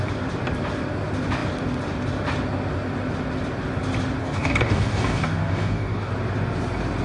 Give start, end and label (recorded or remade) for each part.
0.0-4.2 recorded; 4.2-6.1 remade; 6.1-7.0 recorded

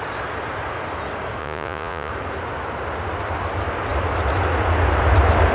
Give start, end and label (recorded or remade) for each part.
0.0-1.4 recorded; 1.4-2.1 remade; 2.1-5.5 recorded

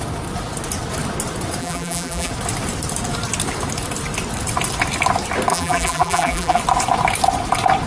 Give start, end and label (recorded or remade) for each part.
0.0-1.6 recorded; 1.6-2.3 remade; 2.3-5.5 recorded; 5.5-6.6 remade; 6.6-7.9 recorded